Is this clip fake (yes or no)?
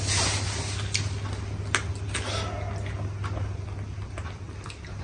no